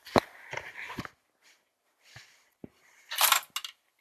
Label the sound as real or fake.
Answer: real